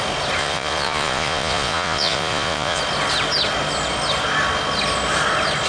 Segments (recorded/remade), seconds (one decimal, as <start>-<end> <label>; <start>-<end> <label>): 0.0-0.4 recorded; 0.4-2.8 remade; 2.8-5.7 recorded